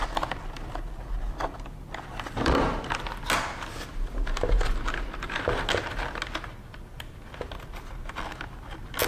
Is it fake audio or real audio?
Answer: real